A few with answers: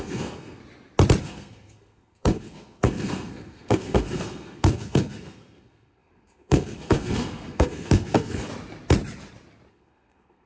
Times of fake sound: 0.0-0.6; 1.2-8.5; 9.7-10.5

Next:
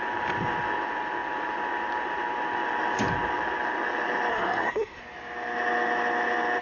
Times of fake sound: 4.3-5.0

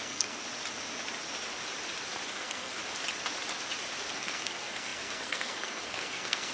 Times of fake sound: 0.0-0.4; 2.3-2.8; 4.1-6.5

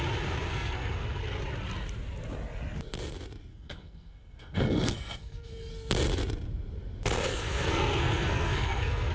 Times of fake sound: 0.5-1.2; 3.5-5.7; 7.3-9.1